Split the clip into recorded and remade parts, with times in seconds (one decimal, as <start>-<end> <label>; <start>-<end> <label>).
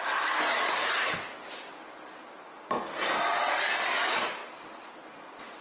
0.0-5.6 recorded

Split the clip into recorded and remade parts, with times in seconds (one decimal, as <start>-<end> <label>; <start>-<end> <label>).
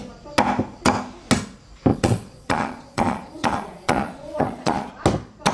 0.0-1.9 recorded; 1.9-4.9 remade; 4.9-5.5 recorded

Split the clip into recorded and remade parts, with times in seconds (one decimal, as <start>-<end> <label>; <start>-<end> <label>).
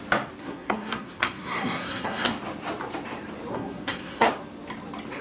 0.0-0.4 recorded; 0.4-2.3 remade; 2.3-3.5 recorded; 3.5-4.3 remade; 4.3-5.2 recorded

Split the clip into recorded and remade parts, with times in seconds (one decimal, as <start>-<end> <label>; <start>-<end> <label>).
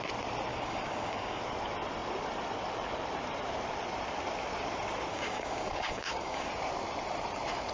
0.0-0.5 recorded; 0.5-1.4 remade; 1.4-5.1 recorded; 5.1-6.5 remade; 6.5-7.7 recorded